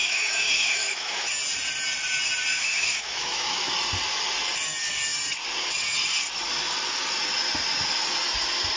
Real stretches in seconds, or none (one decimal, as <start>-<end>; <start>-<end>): 1.3-2.5; 3.7-8.8